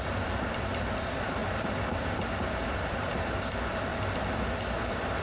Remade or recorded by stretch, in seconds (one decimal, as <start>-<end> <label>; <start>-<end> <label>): 0.0-3.9 remade; 3.9-4.6 recorded; 4.6-5.2 remade